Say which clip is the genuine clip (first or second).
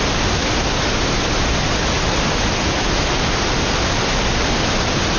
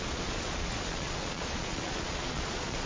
first